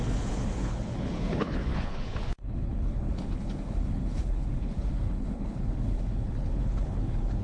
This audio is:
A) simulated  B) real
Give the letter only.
A